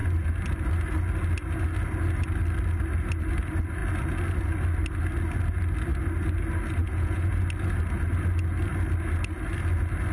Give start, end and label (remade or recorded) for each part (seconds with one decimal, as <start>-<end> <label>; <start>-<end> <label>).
0.0-6.8 recorded; 6.8-7.4 remade; 7.4-10.1 recorded